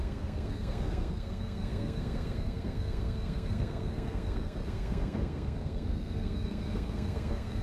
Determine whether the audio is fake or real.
fake